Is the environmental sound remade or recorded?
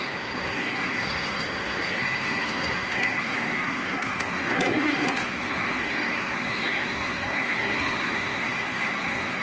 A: remade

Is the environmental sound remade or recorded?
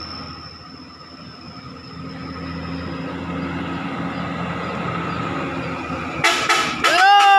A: recorded